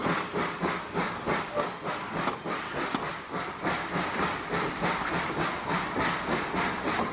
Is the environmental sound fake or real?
real